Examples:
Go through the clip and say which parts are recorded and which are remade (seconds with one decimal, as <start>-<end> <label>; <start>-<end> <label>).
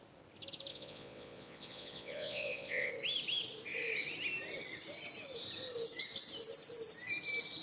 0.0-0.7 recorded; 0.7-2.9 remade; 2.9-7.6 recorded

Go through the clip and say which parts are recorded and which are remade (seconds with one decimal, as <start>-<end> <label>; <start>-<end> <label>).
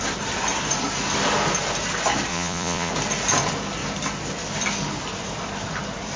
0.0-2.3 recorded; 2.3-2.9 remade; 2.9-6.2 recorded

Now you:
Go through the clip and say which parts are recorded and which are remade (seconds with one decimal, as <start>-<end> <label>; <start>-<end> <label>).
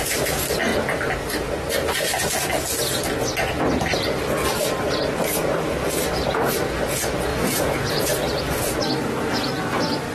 0.0-7.3 recorded; 7.3-8.1 remade; 8.1-10.1 recorded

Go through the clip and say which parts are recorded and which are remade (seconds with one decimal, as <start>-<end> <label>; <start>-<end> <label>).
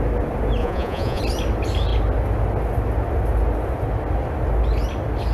0.0-0.6 recorded; 0.6-1.2 remade; 1.2-5.3 recorded